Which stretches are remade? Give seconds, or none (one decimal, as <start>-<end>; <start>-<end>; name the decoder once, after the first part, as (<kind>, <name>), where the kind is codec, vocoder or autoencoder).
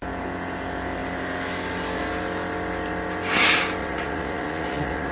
3.8-5.1 (vocoder, Vocos)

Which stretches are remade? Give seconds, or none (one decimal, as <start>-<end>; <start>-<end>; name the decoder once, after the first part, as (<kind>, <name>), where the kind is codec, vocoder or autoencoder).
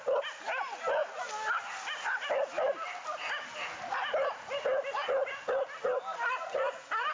none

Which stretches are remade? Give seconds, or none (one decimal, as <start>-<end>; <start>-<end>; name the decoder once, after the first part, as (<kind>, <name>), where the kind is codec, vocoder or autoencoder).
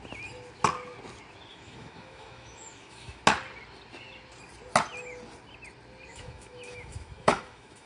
1.5-3.2 (autoencoder, DAC-VAE); 6.1-7.9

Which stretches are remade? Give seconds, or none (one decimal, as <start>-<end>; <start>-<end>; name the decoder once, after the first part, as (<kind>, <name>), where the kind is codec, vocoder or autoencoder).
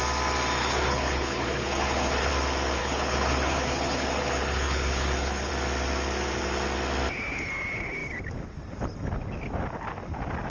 0.6-2.3 (codec, HILCodec); 2.8-5.5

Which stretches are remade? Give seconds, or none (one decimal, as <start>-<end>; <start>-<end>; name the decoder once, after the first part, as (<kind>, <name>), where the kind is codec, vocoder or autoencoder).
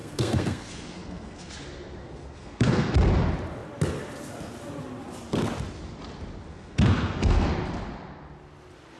0.0-1.5 (codec, SNAC); 2.0-2.9; 6.5-7.5